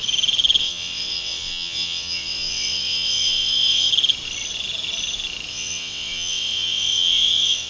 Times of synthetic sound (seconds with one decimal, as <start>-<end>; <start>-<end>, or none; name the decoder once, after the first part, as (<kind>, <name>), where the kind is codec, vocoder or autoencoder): 0.6-3.9 (vocoder, WaveNeXt); 5.5-7.7